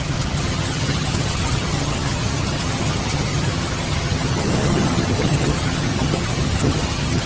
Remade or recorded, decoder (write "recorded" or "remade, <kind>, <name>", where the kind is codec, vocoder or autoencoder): remade, vocoder, HiFi-GAN